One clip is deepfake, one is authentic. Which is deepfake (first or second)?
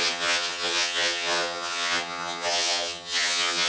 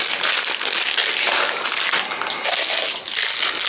first